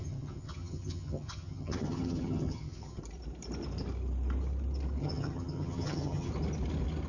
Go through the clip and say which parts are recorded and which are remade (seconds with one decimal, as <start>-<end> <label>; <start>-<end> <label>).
0.0-3.0 remade; 3.0-5.0 recorded; 5.0-6.3 remade; 6.3-7.1 recorded